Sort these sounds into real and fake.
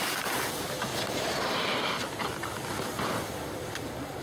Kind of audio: real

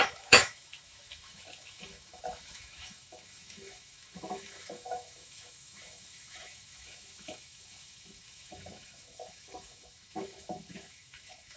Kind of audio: fake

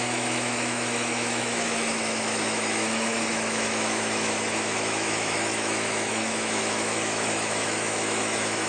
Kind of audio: fake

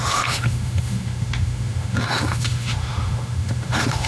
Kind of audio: fake